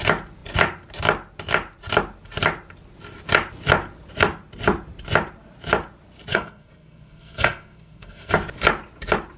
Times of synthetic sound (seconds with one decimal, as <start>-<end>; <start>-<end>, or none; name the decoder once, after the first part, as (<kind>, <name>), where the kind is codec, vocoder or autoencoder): 6.3-8.3 (codec, SNAC)